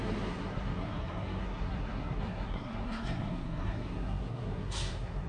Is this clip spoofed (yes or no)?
yes